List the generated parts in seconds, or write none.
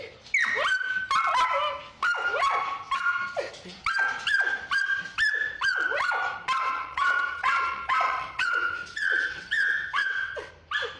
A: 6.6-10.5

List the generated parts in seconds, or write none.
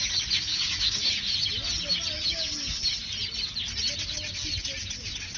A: 0.5-1.3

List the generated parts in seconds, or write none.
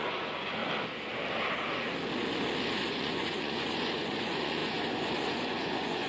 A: 0.0-0.6; 2.9-6.1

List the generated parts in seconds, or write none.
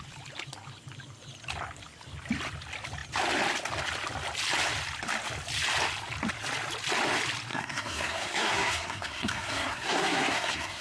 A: 7.5-10.8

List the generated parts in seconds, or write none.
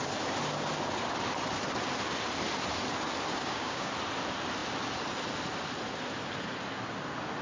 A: 3.3-3.9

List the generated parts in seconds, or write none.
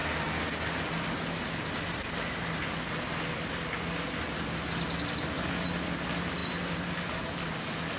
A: none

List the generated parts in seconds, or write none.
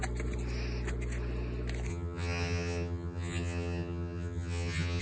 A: 1.9-5.0